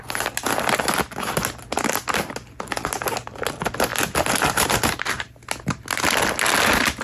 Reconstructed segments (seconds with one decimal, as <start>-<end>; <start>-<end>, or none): none